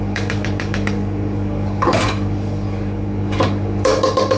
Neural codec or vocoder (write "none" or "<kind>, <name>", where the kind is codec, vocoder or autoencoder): codec, DAC